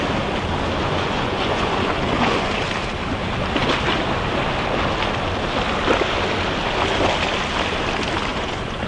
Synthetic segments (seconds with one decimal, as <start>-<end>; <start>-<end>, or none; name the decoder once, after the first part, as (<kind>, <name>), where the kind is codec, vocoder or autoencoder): 0.8-2.5 (vocoder, Vocos); 8.3-8.9